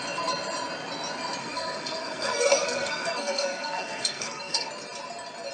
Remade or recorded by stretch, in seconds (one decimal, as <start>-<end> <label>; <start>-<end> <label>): 0.0-1.4 recorded; 1.4-4.7 remade; 4.7-5.5 recorded